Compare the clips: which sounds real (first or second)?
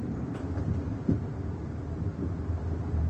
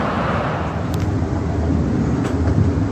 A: second